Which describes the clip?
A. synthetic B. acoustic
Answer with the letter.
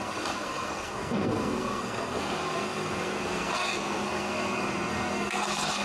A